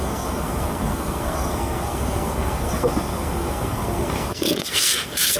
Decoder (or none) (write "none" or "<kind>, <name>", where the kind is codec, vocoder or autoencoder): codec, SNAC